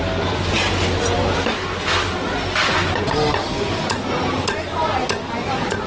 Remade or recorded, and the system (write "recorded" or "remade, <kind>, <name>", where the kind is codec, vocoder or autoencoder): recorded